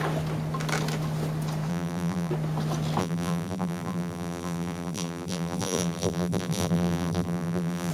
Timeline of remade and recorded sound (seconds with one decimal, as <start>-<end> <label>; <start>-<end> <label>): 0.0-1.7 recorded; 1.7-2.3 remade; 2.3-3.0 recorded; 3.0-7.9 remade